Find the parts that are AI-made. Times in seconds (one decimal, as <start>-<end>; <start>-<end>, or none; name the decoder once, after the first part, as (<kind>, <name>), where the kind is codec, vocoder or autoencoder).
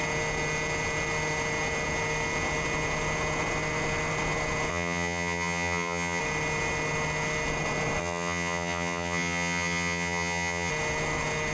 4.7-6.2 (vocoder, HiFi-GAN); 8.0-10.7